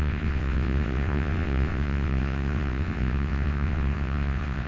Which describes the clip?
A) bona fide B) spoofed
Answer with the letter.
B